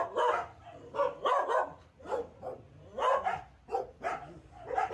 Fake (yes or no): no